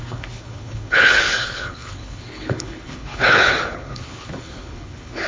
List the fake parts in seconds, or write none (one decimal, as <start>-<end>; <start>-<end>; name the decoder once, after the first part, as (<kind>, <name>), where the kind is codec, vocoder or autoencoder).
0.0-5.3 (codec, HILCodec)